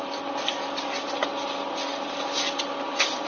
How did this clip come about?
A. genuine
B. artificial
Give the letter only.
A